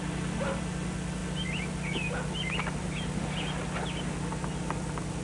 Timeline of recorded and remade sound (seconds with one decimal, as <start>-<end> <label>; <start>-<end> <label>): 0.0-5.2 recorded